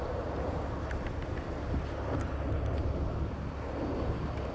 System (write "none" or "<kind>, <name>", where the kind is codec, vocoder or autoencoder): none